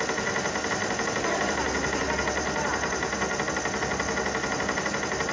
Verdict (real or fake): real